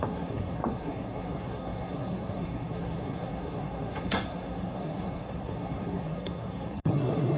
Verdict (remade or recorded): remade